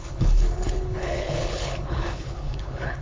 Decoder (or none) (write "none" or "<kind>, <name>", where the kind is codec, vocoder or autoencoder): codec, HILCodec